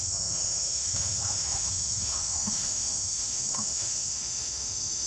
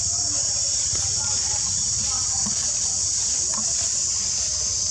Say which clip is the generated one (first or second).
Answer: first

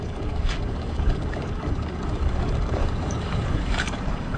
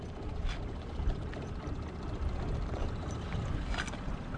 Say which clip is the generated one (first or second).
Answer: first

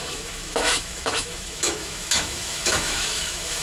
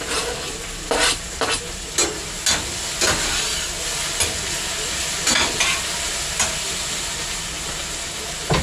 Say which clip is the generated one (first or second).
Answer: first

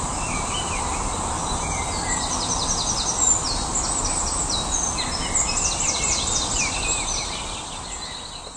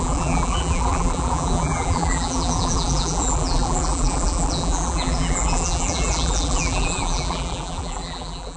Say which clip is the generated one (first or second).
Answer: second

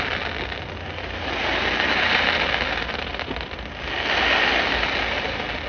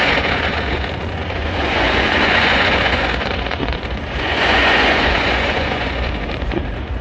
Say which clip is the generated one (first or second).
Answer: second